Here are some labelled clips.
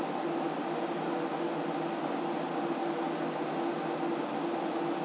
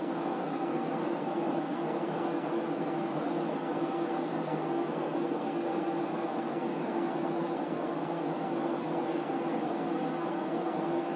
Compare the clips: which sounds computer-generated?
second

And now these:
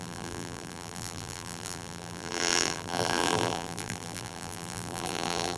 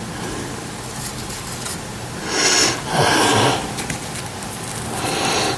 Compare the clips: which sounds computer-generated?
first